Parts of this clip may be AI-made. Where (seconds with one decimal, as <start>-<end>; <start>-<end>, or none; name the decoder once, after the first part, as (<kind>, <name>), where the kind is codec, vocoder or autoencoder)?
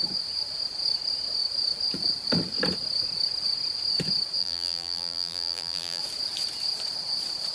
4.4-6.0 (vocoder, BigVGAN v2)